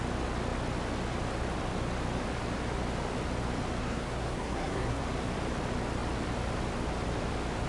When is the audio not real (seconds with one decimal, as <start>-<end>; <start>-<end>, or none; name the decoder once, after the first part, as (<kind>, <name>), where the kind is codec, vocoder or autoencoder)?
3.8-5.0 (codec, SNAC)